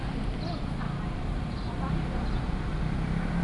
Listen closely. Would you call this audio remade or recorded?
recorded